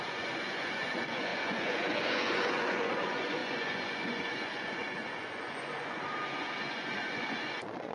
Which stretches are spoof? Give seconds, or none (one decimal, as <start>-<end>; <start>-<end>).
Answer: 0.0-7.9